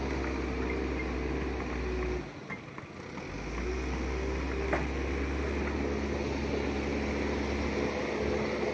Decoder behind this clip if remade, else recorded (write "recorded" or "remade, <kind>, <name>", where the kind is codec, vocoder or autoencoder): recorded